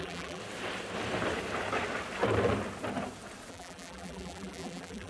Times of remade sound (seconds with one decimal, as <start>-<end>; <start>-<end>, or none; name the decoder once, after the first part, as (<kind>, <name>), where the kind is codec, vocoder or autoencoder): 0.0-0.4 (vocoder, BigVGAN v2); 3.5-5.1

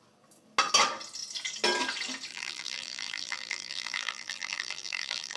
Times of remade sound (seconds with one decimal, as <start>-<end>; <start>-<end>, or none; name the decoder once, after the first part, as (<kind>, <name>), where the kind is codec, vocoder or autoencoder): 2.3-5.4 (vocoder, BigVGAN v2)